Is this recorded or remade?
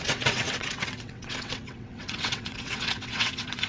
remade